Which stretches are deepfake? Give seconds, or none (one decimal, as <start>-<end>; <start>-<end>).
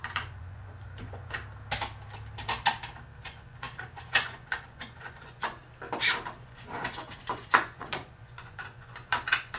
0.0-1.4; 3.2-5.6; 6.4-9.6